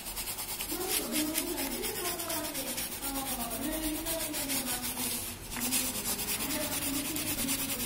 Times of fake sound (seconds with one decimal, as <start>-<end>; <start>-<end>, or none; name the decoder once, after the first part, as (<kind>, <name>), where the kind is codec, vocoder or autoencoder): none